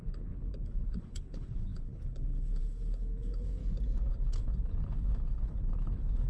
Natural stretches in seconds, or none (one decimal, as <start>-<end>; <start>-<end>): 3.6-4.1